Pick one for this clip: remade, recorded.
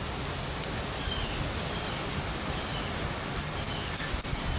recorded